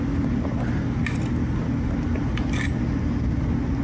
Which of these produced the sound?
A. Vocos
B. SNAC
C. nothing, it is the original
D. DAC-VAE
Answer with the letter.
C